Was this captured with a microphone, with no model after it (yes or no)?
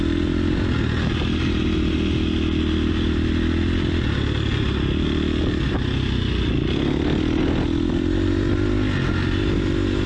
yes